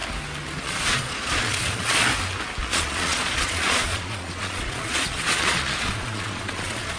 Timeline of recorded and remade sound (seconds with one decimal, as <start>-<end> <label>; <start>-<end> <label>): 0.0-0.6 recorded; 0.6-2.1 remade; 2.1-2.6 recorded; 2.6-7.0 remade